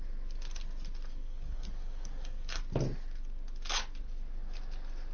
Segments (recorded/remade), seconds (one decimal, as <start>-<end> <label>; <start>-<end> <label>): 0.0-1.1 recorded; 1.1-2.6 remade; 2.6-5.1 recorded